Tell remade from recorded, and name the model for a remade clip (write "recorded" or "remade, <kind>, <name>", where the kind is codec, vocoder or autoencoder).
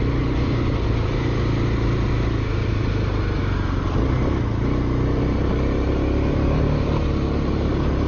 recorded